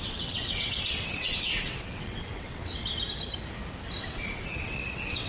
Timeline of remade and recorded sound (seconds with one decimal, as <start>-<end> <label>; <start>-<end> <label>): 0.0-2.8 remade; 2.8-4.0 recorded; 4.0-5.3 remade